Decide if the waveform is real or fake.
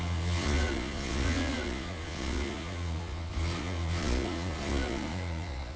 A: fake